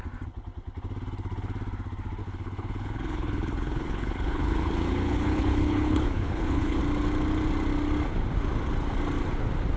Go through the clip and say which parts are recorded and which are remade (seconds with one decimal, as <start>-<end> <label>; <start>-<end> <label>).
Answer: 0.0-2.2 recorded; 2.2-6.8 remade; 6.8-9.8 recorded